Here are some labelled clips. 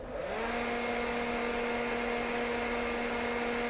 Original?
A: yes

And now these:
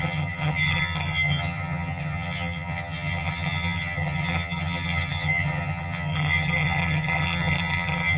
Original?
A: no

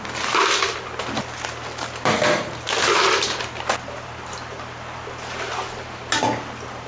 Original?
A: yes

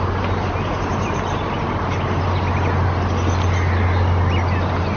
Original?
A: yes